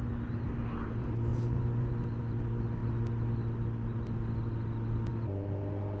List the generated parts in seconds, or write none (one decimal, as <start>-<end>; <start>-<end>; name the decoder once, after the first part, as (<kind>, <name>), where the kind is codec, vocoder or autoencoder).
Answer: 1.3-1.9 (vocoder, BigVGAN v2)